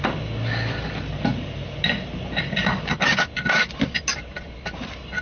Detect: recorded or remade recorded